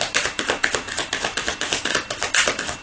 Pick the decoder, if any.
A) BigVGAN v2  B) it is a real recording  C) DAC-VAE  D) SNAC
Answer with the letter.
B